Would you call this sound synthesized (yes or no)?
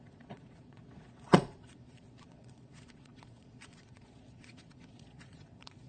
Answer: yes